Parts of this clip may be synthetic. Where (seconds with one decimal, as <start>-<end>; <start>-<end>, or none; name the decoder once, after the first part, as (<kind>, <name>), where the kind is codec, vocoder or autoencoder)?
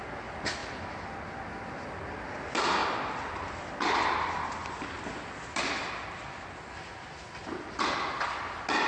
none